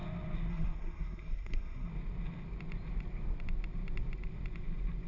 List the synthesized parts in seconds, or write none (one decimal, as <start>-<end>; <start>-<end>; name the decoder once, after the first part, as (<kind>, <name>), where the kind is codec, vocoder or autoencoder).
0.5-1.9 (codec, SNAC)